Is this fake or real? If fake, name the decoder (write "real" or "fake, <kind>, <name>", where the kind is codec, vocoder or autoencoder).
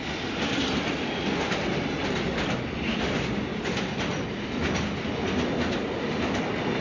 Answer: real